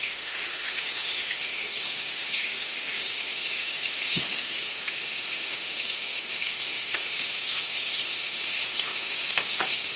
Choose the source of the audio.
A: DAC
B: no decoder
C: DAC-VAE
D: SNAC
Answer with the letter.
C